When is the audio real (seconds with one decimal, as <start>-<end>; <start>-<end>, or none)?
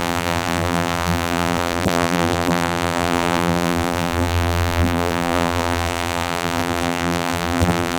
none